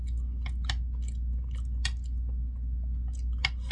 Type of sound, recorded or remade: recorded